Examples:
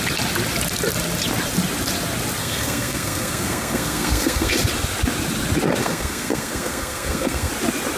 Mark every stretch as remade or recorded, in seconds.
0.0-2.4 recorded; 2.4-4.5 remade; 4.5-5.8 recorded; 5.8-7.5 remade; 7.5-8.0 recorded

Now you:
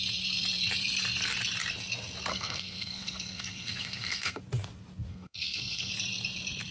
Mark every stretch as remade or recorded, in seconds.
0.0-2.3 recorded; 2.3-4.4 remade; 4.4-5.1 recorded; 5.1-5.9 remade; 5.9-6.7 recorded